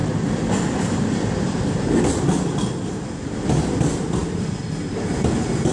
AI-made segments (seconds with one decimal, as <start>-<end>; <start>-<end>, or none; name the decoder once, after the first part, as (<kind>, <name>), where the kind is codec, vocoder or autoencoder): none